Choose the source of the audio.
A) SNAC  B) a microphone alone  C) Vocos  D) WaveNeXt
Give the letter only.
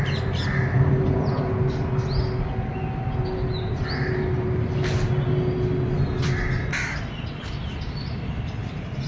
B